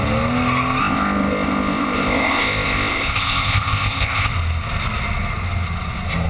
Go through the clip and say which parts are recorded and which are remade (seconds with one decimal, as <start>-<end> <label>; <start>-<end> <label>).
0.0-0.8 recorded; 0.8-4.3 remade; 4.3-6.3 recorded